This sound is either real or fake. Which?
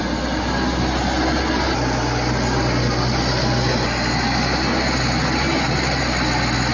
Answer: real